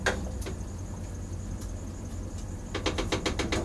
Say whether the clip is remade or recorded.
recorded